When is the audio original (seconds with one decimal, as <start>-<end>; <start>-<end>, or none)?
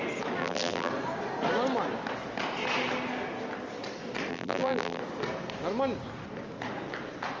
0.0-0.4; 0.9-4.3; 5.0-7.4